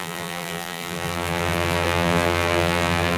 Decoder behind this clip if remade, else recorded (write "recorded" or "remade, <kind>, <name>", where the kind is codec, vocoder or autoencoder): remade, vocoder, BigVGAN v2